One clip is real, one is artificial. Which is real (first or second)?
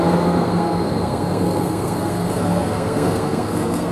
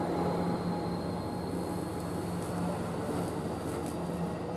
second